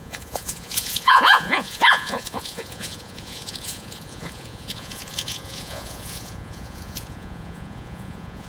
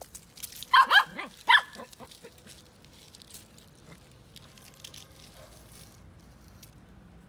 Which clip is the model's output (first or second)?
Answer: first